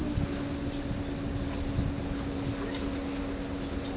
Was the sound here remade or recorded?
recorded